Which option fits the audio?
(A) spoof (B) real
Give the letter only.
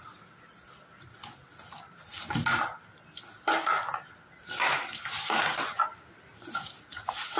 B